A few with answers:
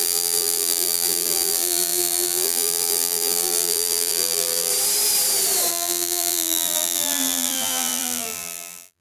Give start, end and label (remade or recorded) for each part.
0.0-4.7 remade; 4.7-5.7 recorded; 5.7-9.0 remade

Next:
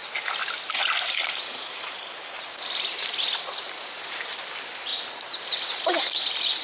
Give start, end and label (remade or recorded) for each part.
0.0-0.8 recorded; 0.8-6.6 remade

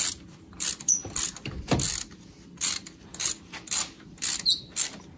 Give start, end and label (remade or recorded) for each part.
0.0-5.2 recorded

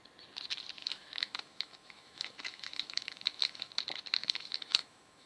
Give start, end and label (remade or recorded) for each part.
0.0-0.8 recorded; 0.8-3.8 remade; 3.8-4.2 recorded; 4.2-5.3 remade

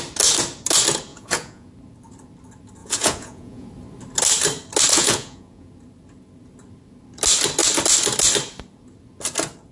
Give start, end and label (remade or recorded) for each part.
0.0-1.1 recorded; 1.1-1.7 remade; 1.7-2.8 recorded; 2.8-3.7 remade; 3.7-4.9 recorded; 4.9-5.7 remade; 5.7-9.7 recorded

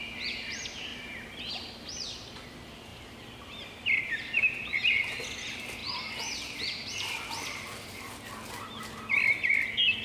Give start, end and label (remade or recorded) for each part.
0.0-2.9 recorded; 2.9-4.0 remade; 4.0-5.8 recorded; 5.8-8.8 remade; 8.8-10.0 recorded

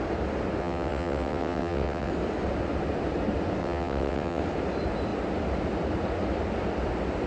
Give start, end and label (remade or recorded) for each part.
0.0-0.6 recorded; 0.6-2.1 remade; 2.1-3.6 recorded; 3.6-4.4 remade; 4.4-7.3 recorded

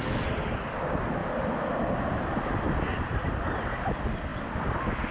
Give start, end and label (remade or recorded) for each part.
0.0-1.2 recorded; 1.2-2.3 remade; 2.3-2.9 recorded; 2.9-3.5 remade; 3.5-5.1 recorded